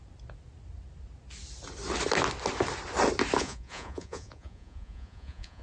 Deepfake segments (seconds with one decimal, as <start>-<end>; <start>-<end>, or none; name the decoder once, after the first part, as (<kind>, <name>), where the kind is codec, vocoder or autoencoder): 3.4-5.6 (vocoder, Vocos)